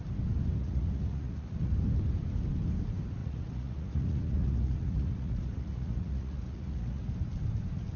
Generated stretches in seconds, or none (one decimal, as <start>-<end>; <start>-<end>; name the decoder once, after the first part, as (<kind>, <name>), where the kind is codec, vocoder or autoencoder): 0.6-1.7 (vocoder, Vocos); 3.2-7.1